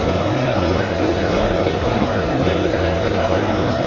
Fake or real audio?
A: fake